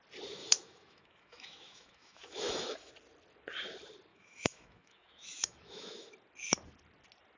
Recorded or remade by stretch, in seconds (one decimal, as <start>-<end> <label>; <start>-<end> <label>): 0.0-0.4 recorded; 0.4-2.9 remade; 2.9-4.1 recorded; 4.1-6.1 remade; 6.1-7.4 recorded